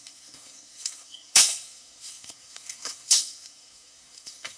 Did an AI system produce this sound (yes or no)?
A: yes